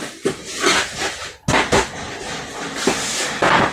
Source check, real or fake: real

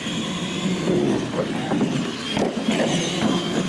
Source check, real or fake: real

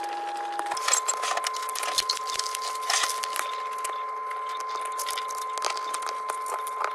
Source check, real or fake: real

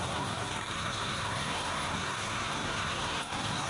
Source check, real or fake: fake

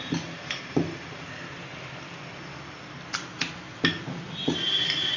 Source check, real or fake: real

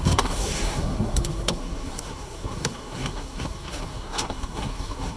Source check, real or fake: fake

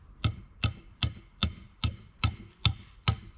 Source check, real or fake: real